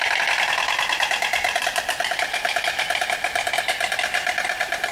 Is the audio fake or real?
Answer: fake